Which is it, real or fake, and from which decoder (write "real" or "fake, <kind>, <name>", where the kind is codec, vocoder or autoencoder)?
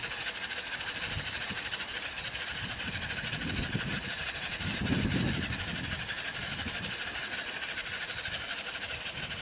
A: real